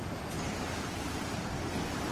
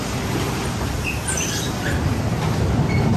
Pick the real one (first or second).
first